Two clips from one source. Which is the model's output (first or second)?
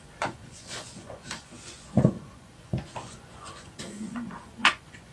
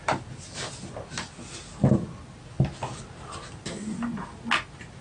first